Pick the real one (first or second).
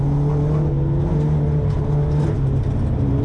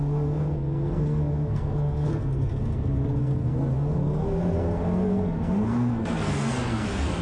first